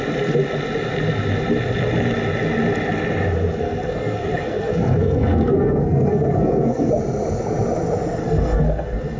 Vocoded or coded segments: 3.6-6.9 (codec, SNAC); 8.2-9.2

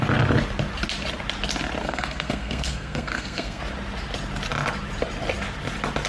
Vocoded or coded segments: 1.8-3.6 (codec, SNAC)

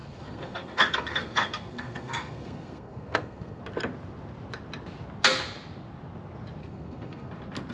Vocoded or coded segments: 0.0-3.6 (codec, SNAC); 6.6-7.3

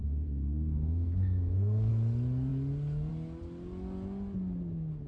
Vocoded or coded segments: 0.0-1.9 (codec, SNAC)

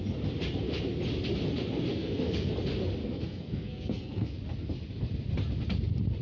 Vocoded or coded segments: 1.9-2.5 (codec, SNAC); 3.0-4.4

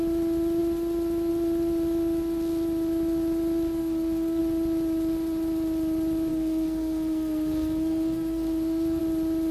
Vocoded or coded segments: 3.8-4.4 (codec, SNAC); 6.3-9.0

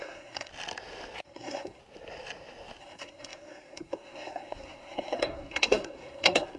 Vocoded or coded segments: 0.0-0.5 (codec, SNAC); 1.2-1.8; 2.8-6.6